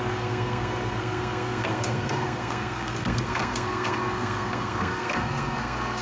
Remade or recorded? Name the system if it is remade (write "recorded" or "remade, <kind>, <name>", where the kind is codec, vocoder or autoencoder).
remade, codec, SNAC